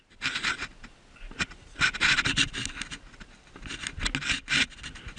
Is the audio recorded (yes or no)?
yes